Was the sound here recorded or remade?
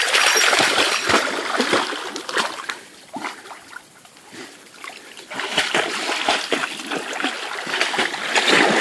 recorded